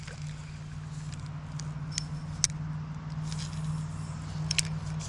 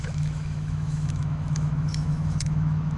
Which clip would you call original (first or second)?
first